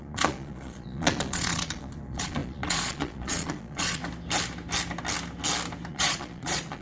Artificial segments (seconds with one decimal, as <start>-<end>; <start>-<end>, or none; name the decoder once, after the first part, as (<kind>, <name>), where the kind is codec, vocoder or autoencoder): 0.0-4.0 (vocoder, Vocos); 5.9-6.8